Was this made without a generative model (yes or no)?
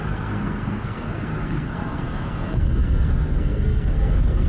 no